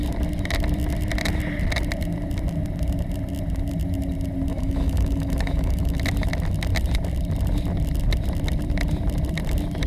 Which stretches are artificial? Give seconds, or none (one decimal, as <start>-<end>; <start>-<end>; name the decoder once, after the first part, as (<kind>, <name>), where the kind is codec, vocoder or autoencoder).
4.5-6.0 (autoencoder, DAC-VAE)